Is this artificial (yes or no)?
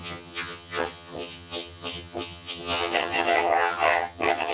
yes